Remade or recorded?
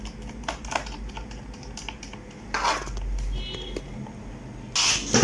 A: recorded